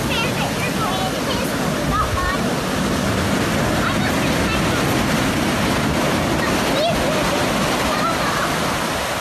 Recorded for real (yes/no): yes